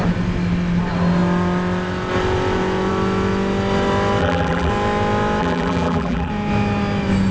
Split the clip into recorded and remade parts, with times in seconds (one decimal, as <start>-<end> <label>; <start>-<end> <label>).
0.0-4.2 recorded; 4.2-4.7 remade; 4.7-5.4 recorded; 5.4-6.3 remade; 6.3-7.3 recorded